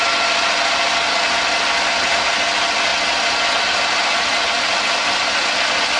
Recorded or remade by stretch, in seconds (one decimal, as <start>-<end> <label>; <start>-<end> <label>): 0.0-6.0 recorded